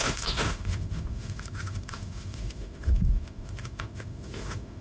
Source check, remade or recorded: remade